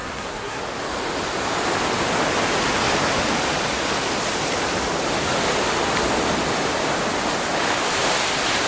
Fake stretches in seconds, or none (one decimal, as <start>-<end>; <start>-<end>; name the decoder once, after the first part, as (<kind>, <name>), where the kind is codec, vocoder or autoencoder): 0.0-0.6 (codec, SNAC)